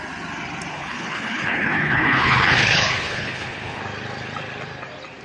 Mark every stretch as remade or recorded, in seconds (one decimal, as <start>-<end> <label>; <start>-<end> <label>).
0.0-0.7 recorded; 0.7-3.8 remade; 3.8-5.2 recorded